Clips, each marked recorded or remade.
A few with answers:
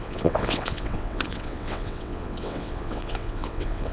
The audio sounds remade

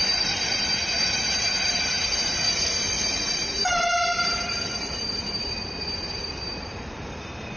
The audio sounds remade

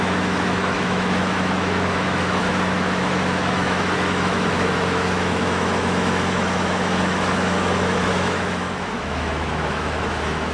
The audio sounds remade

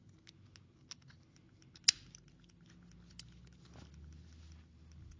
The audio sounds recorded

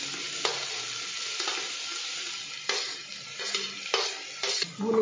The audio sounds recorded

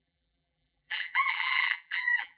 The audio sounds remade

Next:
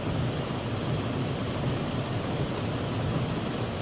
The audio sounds recorded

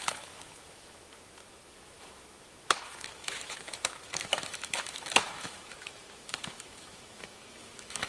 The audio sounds remade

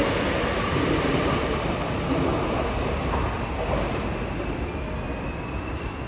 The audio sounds recorded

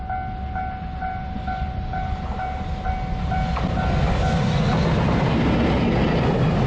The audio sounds recorded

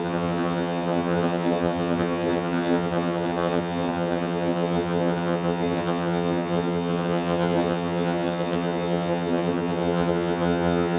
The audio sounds remade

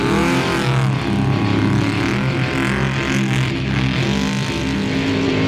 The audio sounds recorded